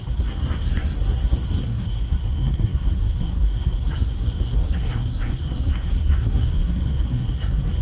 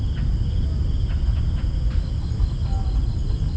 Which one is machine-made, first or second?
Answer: first